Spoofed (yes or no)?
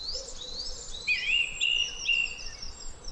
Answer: no